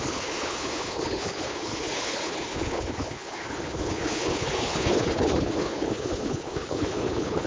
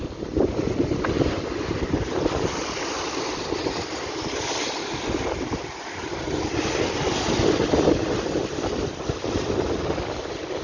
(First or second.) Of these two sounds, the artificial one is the first